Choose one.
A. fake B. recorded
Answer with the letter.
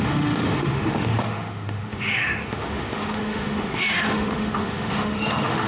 A